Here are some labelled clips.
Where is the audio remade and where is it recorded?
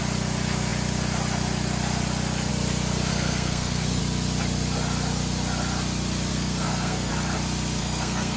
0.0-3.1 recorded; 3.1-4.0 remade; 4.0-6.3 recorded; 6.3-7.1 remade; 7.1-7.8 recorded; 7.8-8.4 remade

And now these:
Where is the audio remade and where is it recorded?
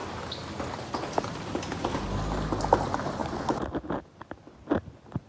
0.0-5.3 recorded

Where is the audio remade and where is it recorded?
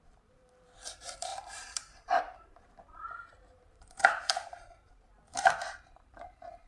0.0-6.7 remade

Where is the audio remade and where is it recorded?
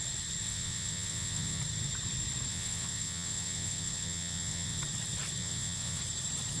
0.0-0.4 recorded; 0.4-1.6 remade; 1.6-2.5 recorded; 2.5-4.8 remade; 4.8-5.4 recorded; 5.4-6.0 remade; 6.0-6.6 recorded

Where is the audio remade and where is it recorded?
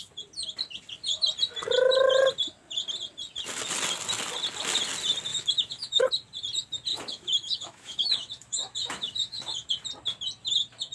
0.0-5.3 recorded; 5.3-6.0 remade; 6.0-6.9 recorded; 6.9-9.7 remade; 9.7-10.9 recorded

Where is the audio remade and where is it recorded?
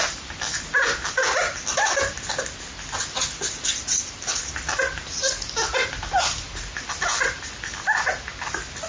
0.0-8.9 recorded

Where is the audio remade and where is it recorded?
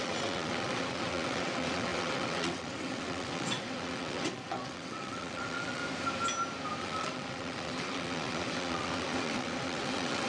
0.0-5.8 remade; 5.8-6.8 recorded; 6.8-10.3 remade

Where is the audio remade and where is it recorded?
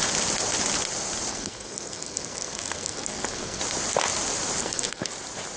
0.0-1.3 recorded; 1.3-3.6 remade; 3.6-4.6 recorded; 4.6-5.1 remade; 5.1-5.6 recorded